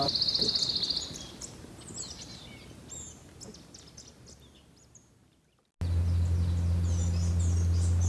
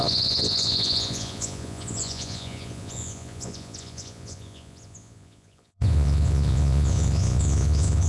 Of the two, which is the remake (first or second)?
second